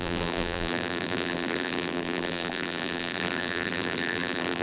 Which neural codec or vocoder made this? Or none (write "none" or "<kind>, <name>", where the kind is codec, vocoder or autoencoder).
vocoder, BigVGAN v2